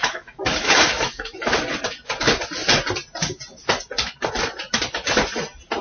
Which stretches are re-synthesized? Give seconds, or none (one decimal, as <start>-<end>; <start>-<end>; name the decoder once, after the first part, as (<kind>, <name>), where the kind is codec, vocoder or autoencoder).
0.0-1.5 (autoencoder, DAC-VAE)